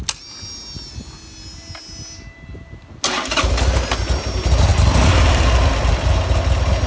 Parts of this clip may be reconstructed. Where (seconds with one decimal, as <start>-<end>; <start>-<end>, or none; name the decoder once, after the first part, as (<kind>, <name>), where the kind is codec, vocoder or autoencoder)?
none